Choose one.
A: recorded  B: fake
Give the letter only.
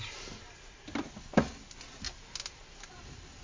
A